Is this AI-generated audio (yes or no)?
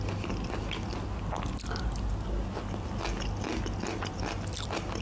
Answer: no